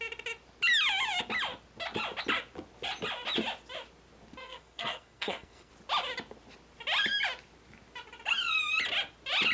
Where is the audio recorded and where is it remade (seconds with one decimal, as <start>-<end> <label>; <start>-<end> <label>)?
0.0-4.4 recorded; 4.4-5.7 remade; 5.7-9.5 recorded